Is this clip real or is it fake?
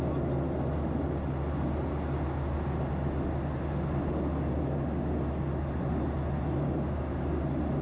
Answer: real